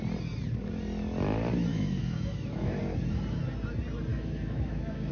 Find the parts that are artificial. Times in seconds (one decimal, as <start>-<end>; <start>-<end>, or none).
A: 1.7-2.8; 4.1-5.1